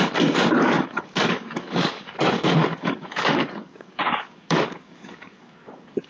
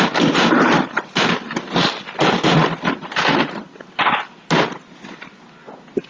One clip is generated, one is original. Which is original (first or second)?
second